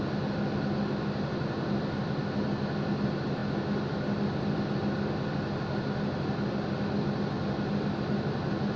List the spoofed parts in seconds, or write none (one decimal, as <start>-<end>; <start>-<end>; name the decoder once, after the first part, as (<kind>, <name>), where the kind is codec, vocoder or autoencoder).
none